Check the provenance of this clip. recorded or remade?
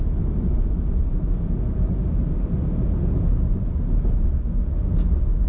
recorded